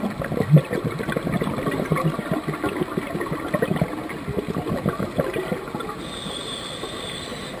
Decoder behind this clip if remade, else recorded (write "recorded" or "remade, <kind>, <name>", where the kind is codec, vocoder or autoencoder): recorded